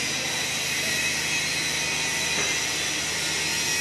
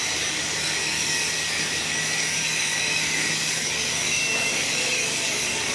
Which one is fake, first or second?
second